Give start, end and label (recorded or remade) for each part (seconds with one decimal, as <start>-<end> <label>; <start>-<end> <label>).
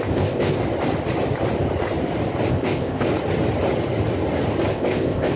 0.0-0.6 remade; 0.6-2.5 recorded; 2.5-3.1 remade; 3.1-4.7 recorded; 4.7-5.4 remade